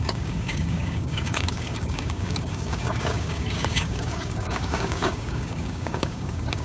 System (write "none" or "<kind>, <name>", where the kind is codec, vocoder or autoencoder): codec, DAC